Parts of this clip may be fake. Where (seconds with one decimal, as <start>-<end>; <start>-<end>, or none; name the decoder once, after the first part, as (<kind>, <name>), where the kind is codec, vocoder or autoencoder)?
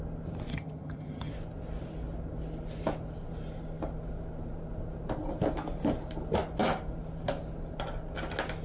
0.5-1.3 (vocoder, HiFi-GAN)